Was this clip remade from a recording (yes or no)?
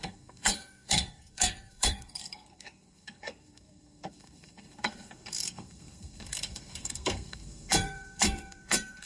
yes